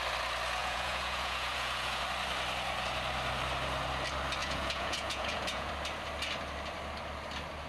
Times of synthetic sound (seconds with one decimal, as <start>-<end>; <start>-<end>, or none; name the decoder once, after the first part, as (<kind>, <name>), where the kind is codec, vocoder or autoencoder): 0.6-2.0 (vocoder, Vocos); 4.4-5.7